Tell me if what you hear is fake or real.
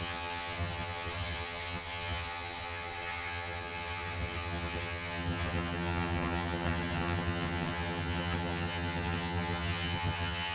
fake